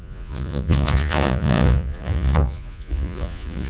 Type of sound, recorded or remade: remade